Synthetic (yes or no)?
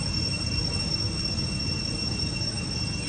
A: no